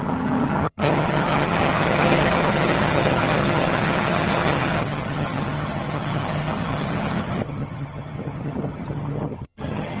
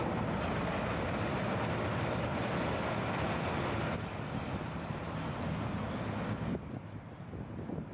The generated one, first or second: first